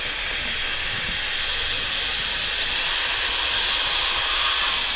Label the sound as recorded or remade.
recorded